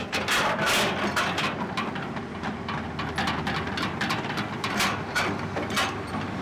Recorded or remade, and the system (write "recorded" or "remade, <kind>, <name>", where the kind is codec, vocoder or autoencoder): recorded